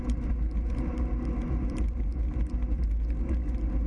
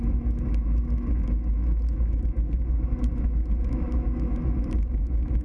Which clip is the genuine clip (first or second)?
first